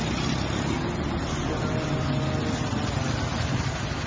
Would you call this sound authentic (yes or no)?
yes